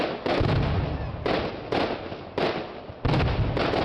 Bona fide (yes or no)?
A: yes